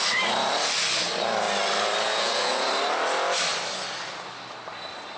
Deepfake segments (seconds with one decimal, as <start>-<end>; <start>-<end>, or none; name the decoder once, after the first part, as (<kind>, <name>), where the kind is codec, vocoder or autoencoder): 2.1-2.7 (vocoder, Vocos)